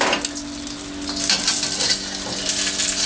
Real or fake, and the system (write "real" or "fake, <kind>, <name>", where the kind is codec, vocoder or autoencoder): real